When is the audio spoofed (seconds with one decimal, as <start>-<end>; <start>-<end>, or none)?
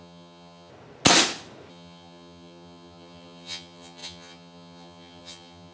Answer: 0.0-0.7; 1.7-5.7